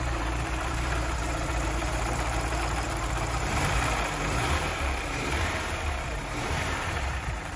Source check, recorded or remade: remade